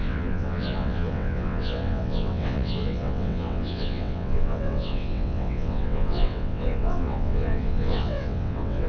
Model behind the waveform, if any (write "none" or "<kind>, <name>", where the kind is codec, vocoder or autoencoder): vocoder, WaveNeXt